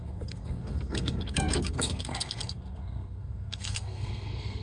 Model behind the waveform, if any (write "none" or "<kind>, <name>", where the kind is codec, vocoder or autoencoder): codec, SNAC